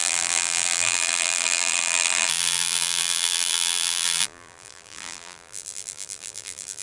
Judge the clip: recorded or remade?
remade